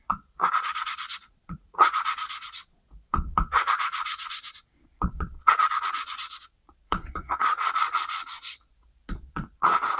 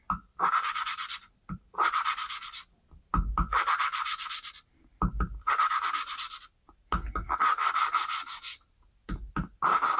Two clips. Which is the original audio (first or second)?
second